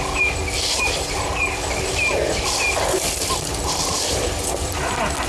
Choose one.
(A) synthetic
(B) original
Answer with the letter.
B